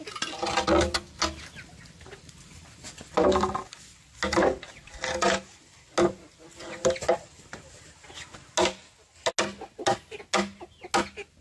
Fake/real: real